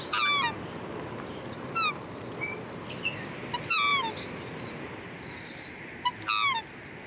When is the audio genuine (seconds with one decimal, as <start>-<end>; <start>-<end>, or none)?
0.0-7.1